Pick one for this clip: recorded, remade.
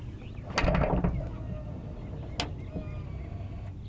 recorded